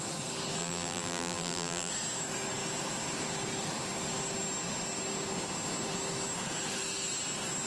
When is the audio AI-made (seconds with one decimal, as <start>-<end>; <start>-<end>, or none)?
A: 0.6-1.9